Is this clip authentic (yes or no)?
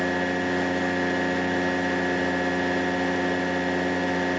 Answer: yes